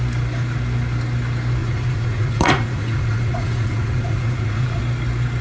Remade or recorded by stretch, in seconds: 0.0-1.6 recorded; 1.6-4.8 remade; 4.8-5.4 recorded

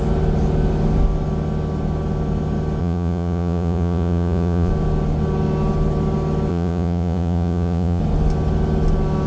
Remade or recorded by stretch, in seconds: 0.0-2.8 recorded; 2.8-4.7 remade; 4.7-6.5 recorded; 6.5-8.0 remade; 8.0-9.3 recorded

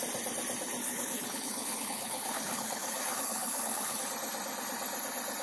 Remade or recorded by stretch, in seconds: 0.0-0.8 recorded; 0.8-4.0 remade; 4.0-5.4 recorded

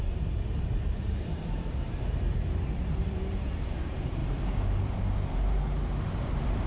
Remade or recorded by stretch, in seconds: 0.0-4.2 remade; 4.2-6.7 recorded